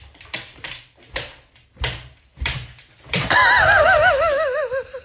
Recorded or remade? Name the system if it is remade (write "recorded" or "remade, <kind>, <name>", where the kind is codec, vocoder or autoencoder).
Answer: remade, vocoder, BigVGAN v2